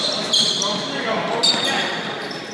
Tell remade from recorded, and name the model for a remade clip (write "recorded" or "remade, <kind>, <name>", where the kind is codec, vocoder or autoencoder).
recorded